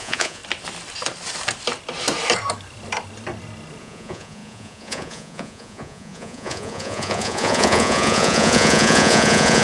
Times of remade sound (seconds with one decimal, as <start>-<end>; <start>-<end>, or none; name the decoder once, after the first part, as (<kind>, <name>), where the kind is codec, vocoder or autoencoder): 0.0-0.4 (vocoder, Vocos); 3.8-9.6